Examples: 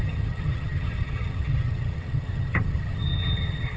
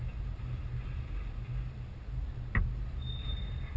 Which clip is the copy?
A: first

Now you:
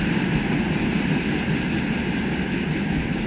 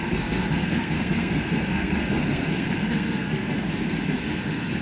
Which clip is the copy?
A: second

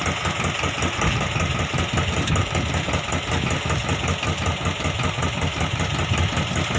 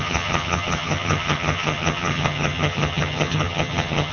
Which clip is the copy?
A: second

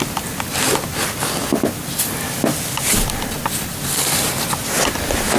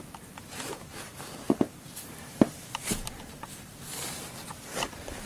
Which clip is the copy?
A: second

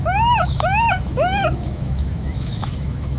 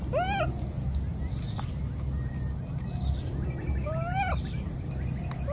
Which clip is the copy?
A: first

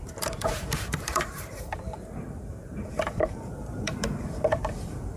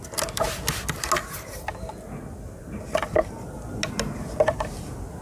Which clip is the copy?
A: first